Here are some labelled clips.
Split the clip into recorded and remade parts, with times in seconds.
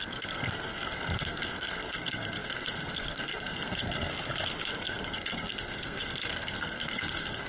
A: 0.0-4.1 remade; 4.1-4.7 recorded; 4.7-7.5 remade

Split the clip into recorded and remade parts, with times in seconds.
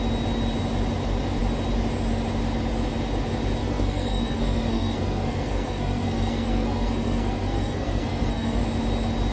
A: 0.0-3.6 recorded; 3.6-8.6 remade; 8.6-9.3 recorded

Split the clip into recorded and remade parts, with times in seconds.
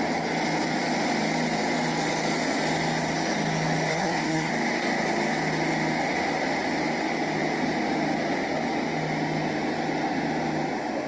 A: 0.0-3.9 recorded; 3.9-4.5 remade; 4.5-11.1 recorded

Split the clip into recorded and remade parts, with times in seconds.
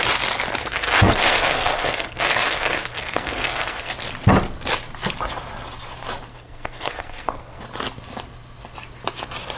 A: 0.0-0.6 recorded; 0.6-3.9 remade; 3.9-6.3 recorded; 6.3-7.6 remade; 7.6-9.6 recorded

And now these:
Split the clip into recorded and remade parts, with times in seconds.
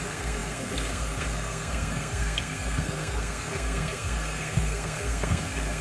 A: 0.0-5.8 remade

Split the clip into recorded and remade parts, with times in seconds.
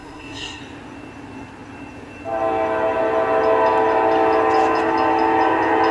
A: 0.0-0.6 remade; 0.6-5.9 recorded